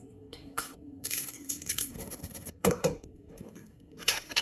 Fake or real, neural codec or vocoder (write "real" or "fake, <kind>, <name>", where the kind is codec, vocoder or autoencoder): fake, codec, SNAC